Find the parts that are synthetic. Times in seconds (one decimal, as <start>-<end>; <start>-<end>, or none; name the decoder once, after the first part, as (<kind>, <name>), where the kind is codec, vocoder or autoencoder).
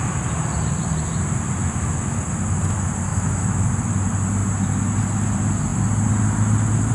1.6-2.2 (autoencoder, DAC-VAE); 3.1-3.7